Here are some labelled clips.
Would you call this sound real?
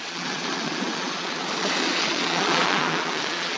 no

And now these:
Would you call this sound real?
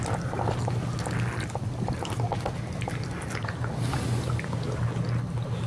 yes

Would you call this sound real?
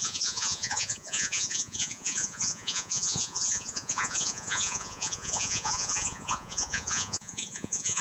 no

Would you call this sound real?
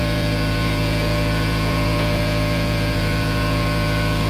no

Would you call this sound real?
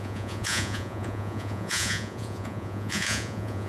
no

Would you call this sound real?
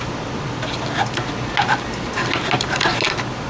yes